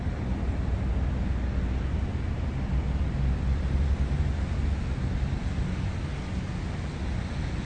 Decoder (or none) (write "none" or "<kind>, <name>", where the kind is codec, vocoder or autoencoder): none